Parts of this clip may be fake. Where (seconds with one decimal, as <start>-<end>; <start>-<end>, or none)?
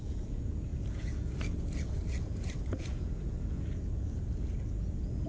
0.0-5.3